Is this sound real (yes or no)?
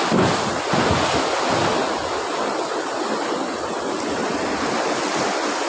yes